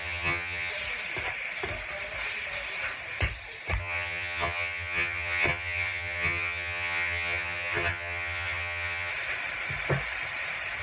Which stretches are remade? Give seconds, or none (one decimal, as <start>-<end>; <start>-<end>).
0.0-0.7; 3.8-9.1